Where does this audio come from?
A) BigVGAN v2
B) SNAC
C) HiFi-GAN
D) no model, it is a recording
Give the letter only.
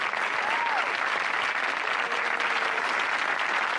D